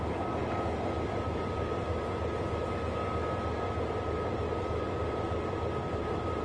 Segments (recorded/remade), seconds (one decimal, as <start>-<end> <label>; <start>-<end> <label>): 0.0-0.4 remade; 0.4-1.1 recorded; 1.1-1.9 remade; 1.9-5.1 recorded; 5.1-6.4 remade